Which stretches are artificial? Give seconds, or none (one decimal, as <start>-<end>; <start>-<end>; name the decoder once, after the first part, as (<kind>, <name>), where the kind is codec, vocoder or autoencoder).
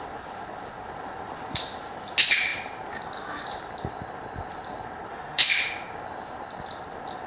5.1-5.6 (autoencoder, DAC-VAE)